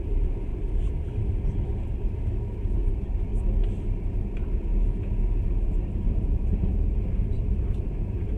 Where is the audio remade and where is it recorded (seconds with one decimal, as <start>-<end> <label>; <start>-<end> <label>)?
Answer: 0.0-0.5 remade; 0.5-2.4 recorded; 2.4-3.3 remade; 3.3-4.2 recorded; 4.2-4.7 remade; 4.7-5.4 recorded; 5.4-8.4 remade

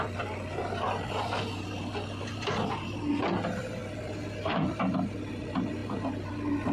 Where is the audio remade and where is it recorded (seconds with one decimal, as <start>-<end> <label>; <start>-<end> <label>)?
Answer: 0.0-5.8 recorded; 5.8-6.7 remade

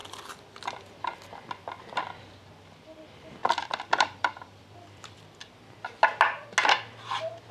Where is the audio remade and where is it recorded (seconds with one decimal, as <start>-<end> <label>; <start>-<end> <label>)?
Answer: 0.0-3.4 recorded; 3.4-5.4 remade; 5.4-7.5 recorded

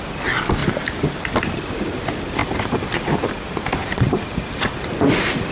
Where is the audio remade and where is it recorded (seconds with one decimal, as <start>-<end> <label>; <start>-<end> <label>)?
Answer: 0.0-0.6 recorded; 0.6-1.3 remade; 1.3-2.4 recorded; 2.4-3.3 remade; 3.3-3.8 recorded; 3.8-4.7 remade; 4.7-5.5 recorded

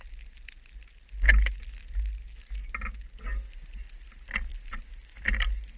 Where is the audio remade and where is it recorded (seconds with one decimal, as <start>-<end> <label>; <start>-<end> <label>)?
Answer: 0.0-4.5 recorded; 4.5-5.2 remade; 5.2-5.8 recorded

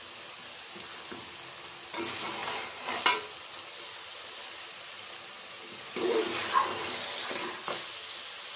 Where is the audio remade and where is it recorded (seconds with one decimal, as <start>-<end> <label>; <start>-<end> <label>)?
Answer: 0.0-8.6 recorded

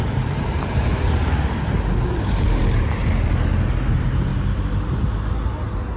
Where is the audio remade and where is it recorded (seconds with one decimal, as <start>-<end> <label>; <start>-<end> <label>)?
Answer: 0.0-1.7 remade; 1.7-2.3 recorded; 2.3-3.0 remade; 3.0-3.5 recorded; 3.5-4.3 remade; 4.3-6.0 recorded

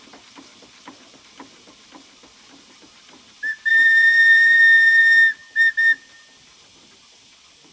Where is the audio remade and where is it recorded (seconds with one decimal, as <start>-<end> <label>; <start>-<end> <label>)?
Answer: 0.0-3.7 recorded; 3.7-4.6 remade; 4.6-7.7 recorded